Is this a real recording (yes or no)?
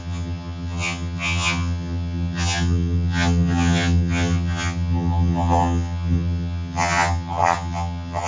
no